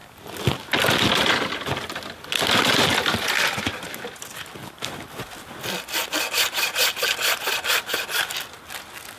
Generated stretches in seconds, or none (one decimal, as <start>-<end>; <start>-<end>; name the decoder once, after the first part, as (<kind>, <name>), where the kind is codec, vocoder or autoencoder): none